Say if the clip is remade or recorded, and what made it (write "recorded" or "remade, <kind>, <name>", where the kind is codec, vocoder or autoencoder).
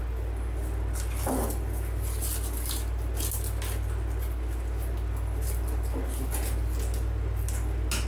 recorded